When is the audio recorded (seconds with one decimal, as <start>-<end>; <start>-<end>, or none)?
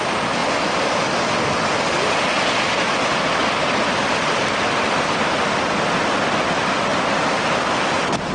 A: 0.0-8.3